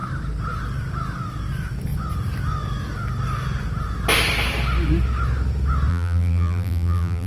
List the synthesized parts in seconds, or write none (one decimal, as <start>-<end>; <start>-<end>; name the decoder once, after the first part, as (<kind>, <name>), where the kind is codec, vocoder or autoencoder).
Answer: 5.9-7.3 (vocoder, BigVGAN v2)